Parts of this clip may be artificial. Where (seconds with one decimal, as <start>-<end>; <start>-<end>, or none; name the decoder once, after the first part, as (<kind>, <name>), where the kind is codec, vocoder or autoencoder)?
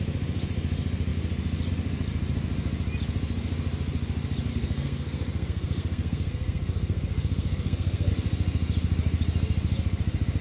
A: 4.5-8.1 (codec, SNAC)